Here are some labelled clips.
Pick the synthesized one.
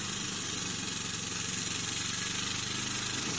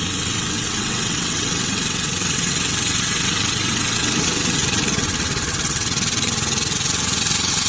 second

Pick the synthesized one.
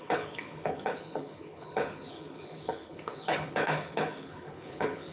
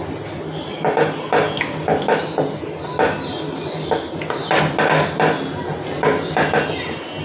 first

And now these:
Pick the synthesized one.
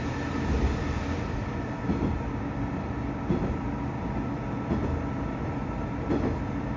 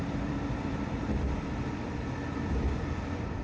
second